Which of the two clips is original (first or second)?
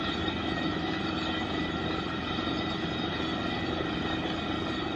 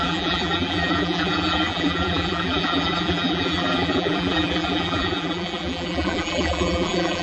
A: first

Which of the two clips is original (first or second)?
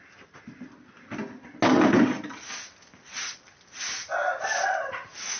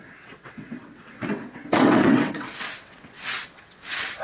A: first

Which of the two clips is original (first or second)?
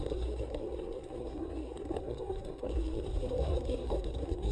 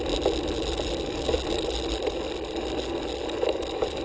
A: second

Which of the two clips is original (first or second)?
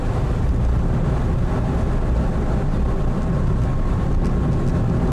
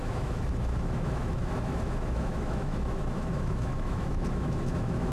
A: first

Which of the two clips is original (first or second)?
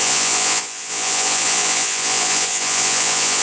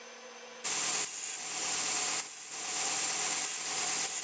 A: second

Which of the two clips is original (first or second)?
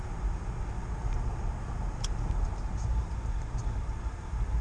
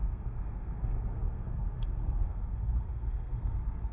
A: first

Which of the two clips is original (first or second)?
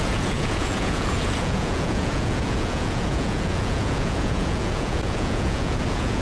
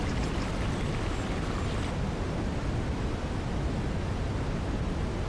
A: second